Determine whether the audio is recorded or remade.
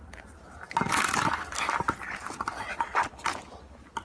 recorded